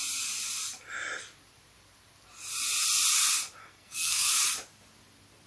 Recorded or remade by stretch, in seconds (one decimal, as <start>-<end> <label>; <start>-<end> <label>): 0.0-3.6 recorded; 3.6-4.3 remade; 4.3-5.5 recorded